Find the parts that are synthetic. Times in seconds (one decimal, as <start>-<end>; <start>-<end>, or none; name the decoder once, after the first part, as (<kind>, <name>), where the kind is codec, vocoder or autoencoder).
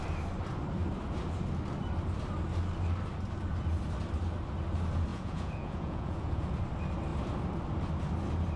5.1-6.5 (vocoder, Vocos)